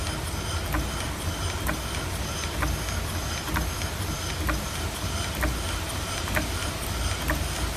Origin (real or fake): real